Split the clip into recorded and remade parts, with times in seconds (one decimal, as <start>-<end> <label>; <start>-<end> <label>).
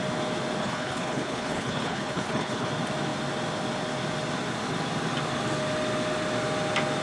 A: 0.0-0.6 recorded; 0.6-2.7 remade; 2.7-7.0 recorded